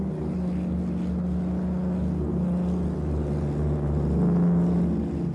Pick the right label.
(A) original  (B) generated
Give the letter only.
A